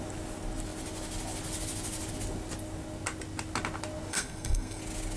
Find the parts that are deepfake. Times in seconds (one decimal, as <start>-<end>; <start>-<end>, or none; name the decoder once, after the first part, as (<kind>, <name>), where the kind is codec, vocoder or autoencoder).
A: 4.1-4.8 (codec, SNAC)